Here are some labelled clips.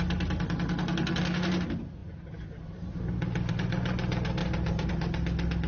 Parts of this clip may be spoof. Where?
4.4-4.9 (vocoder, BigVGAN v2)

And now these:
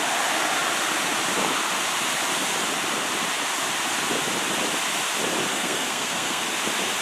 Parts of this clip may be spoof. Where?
5.5-6.4 (codec, SNAC)

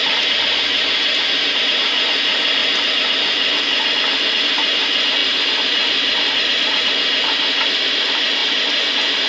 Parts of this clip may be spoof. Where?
0.0-2.6 (vocoder, BigVGAN v2); 4.4-9.3

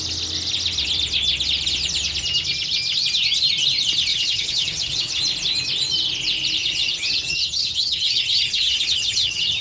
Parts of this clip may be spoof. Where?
4.1-5.2 (vocoder, HiFi-GAN); 6.6-9.6

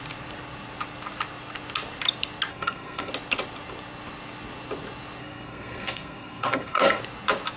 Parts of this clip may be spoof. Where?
2.5-3.1 (codec, SNAC); 5.2-7.0